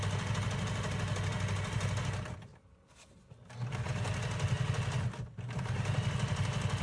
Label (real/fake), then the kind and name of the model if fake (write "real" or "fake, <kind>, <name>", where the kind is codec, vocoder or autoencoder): real